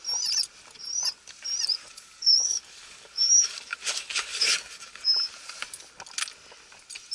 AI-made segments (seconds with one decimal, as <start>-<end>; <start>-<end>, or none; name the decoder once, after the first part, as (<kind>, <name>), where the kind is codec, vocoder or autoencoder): 1.8-5.3 (codec, DAC)